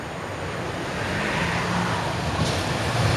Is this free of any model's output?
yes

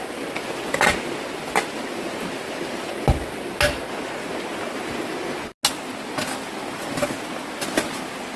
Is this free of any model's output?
yes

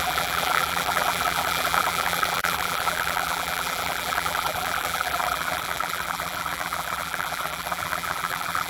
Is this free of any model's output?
no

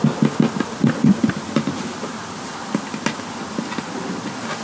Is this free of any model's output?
yes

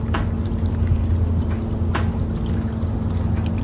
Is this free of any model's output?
yes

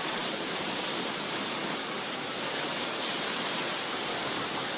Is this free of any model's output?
no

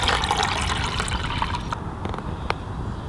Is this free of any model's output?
yes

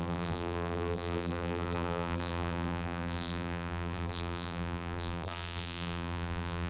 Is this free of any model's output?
no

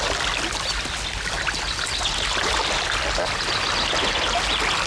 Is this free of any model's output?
yes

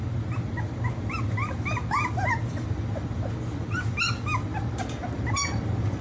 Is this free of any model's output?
yes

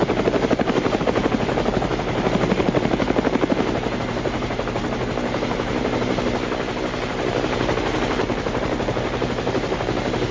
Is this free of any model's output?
no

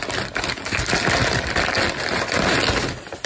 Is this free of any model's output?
yes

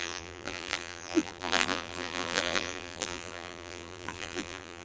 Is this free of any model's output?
no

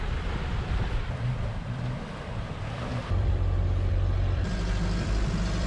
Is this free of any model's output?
no